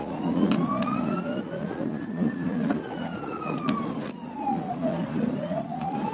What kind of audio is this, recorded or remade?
remade